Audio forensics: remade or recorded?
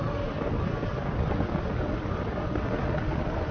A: recorded